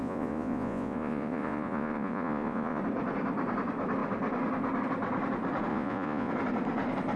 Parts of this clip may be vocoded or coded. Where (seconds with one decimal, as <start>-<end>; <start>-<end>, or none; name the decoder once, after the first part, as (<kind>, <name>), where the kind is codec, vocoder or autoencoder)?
0.0-2.8 (vocoder, Vocos); 5.7-6.3